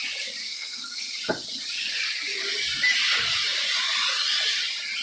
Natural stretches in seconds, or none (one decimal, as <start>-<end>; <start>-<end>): 0.0-0.4; 1.1-5.0